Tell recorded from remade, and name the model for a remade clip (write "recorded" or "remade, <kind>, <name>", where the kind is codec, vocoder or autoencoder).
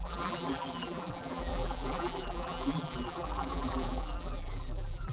remade, vocoder, BigVGAN v2